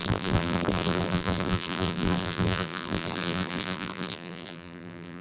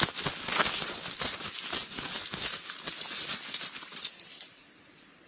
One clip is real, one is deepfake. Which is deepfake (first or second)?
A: first